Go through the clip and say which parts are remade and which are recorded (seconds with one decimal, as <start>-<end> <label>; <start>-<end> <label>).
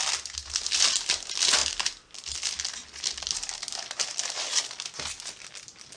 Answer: 0.0-6.0 recorded